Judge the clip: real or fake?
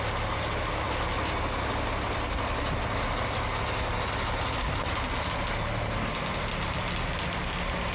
real